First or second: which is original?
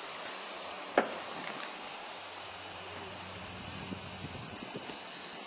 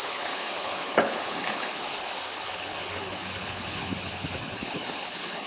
first